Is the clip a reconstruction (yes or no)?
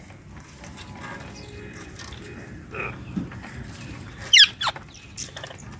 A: no